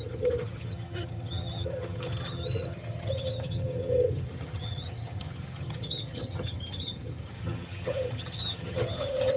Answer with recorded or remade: remade